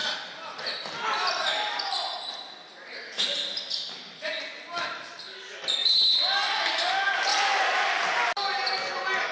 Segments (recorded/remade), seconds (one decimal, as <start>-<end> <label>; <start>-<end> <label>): 0.0-9.3 recorded